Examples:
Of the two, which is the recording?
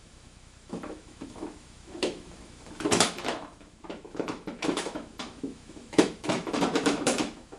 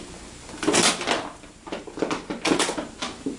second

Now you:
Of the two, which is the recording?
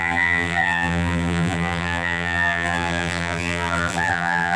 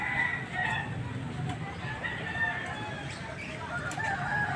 second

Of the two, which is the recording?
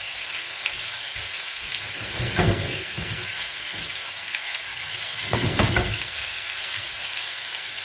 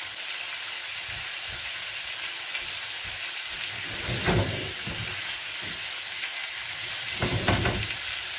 second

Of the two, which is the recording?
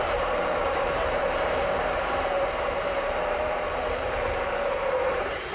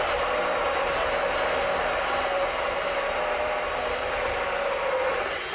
second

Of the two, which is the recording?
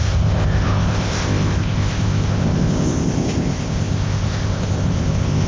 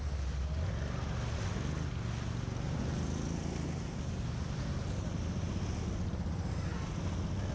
second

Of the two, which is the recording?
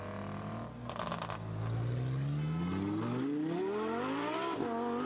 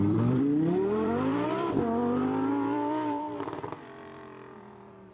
first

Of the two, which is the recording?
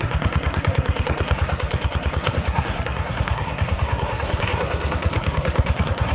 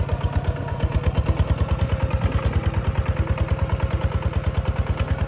second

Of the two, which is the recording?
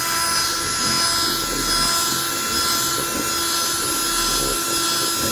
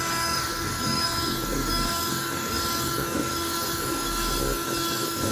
first